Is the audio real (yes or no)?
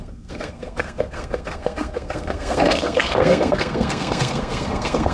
no